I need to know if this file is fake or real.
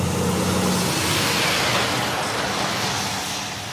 real